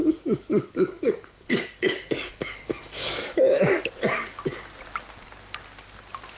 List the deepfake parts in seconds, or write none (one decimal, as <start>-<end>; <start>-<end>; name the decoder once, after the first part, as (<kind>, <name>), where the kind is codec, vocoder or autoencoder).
0.0-3.8 (codec, DAC)